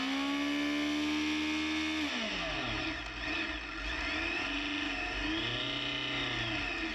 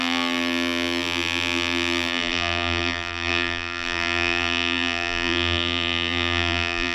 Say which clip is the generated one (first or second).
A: second